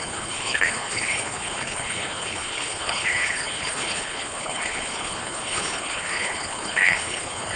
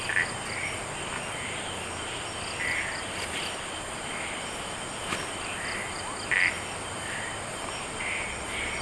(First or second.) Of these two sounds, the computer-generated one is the first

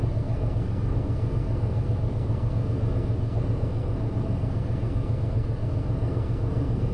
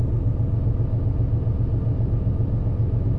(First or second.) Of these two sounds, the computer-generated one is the first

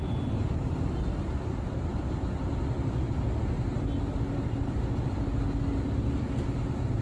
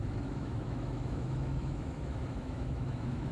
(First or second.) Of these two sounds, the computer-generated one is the second